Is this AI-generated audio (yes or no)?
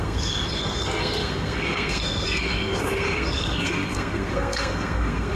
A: yes